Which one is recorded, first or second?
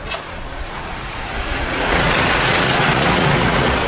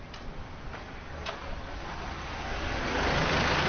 second